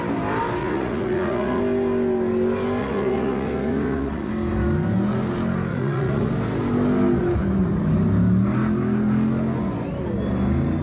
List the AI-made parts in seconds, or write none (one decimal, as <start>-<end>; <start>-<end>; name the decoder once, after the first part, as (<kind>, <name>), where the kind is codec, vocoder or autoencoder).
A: 0.6-1.6 (vocoder, Vocos); 2.8-4.3; 5.7-6.3